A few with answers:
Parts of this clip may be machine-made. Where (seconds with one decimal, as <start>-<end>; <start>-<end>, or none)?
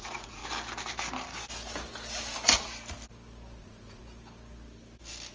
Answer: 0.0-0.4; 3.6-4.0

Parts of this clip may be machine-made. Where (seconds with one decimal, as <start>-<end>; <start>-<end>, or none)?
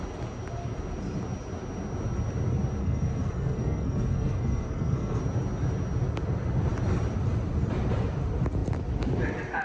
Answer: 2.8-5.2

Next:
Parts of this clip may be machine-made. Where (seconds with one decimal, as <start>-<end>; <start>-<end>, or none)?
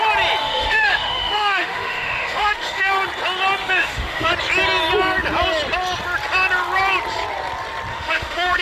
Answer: 0.4-2.9; 3.6-4.3; 7.9-8.6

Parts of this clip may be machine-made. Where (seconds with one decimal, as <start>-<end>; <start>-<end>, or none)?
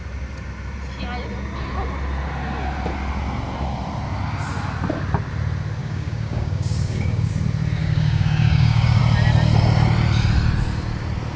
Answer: 5.8-7.3; 7.8-9.0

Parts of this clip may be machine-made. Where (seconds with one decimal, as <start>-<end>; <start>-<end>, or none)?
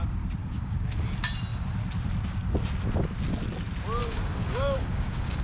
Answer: 0.4-1.0; 4.0-5.4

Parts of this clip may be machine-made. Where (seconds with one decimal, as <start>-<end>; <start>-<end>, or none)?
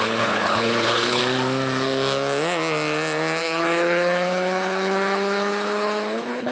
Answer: 0.0-1.2; 3.4-6.5